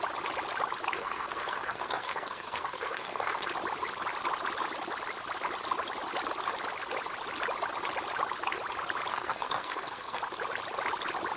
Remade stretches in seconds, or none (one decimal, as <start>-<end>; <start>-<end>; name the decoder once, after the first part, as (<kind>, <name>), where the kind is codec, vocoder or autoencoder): 1.0-3.5 (codec, SNAC); 9.1-10.2